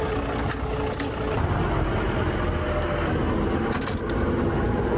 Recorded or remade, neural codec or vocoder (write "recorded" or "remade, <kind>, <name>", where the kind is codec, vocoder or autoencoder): recorded